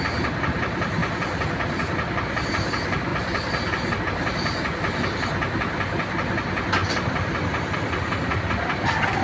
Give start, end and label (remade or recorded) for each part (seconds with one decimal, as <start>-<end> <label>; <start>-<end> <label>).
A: 0.0-1.0 recorded; 1.0-2.5 remade; 2.5-3.1 recorded; 3.1-4.0 remade; 4.0-6.8 recorded; 6.8-9.2 remade